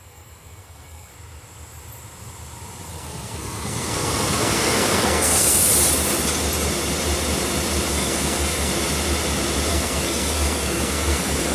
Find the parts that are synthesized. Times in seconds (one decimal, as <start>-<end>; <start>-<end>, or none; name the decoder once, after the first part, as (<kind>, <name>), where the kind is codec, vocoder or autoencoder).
0.0-1.1 (codec, SNAC); 2.9-5.7; 7.9-8.7; 9.7-11.5